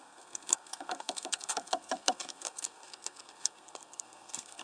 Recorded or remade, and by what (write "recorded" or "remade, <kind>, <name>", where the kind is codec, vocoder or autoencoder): remade, codec, SNAC